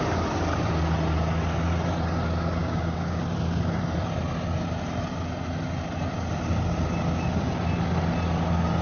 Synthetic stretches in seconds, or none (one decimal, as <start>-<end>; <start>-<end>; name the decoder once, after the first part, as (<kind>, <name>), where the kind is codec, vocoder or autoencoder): 2.6-3.2 (codec, DAC)